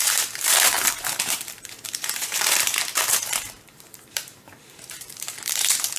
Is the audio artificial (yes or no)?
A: yes